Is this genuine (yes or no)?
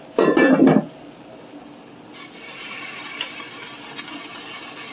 yes